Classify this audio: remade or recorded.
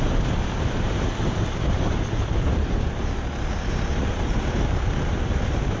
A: remade